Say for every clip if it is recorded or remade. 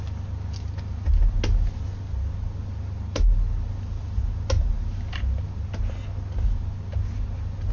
recorded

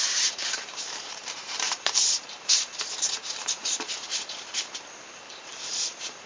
remade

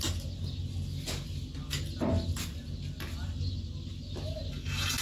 recorded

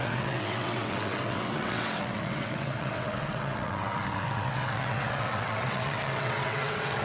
remade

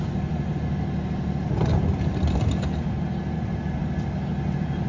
recorded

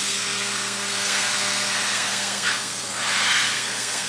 remade